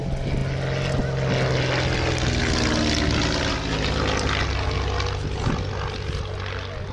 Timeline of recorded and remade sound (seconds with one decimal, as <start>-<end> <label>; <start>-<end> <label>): 0.0-6.9 recorded